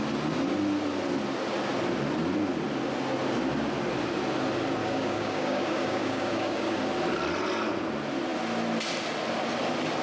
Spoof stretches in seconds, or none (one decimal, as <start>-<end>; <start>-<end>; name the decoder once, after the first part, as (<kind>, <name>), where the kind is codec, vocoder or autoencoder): 4.8-6.8 (codec, DAC)